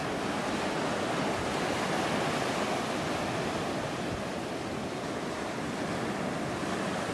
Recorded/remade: recorded